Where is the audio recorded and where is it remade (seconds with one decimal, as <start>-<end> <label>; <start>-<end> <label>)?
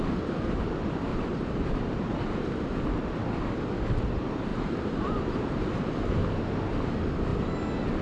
0.0-1.1 recorded; 1.1-2.1 remade; 2.1-4.5 recorded; 4.5-5.6 remade; 5.6-8.0 recorded